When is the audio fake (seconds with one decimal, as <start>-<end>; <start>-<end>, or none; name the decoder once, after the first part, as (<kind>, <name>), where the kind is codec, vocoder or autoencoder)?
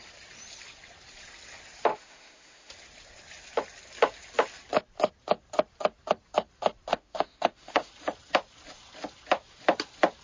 1.9-2.7 (autoencoder, DAC-VAE); 6.9-7.9